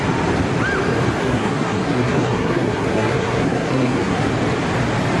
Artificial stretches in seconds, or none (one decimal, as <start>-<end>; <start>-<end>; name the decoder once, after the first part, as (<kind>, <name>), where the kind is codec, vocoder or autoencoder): 1.2-4.3 (codec, SNAC)